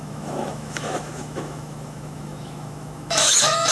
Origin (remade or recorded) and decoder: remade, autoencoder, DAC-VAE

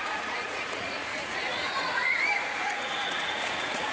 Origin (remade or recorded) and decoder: remade, vocoder, Vocos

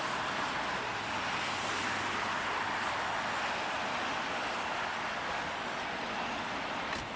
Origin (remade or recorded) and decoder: recorded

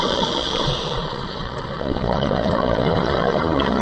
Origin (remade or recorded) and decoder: remade, vocoder, Vocos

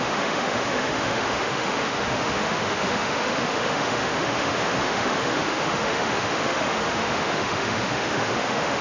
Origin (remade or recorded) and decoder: remade, autoencoder, DAC-VAE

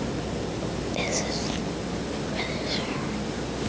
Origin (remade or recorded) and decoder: recorded